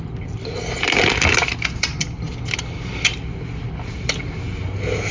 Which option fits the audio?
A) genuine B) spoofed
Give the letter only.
A